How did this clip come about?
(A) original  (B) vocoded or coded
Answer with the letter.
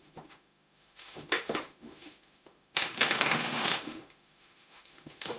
B